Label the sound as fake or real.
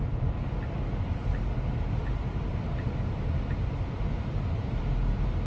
real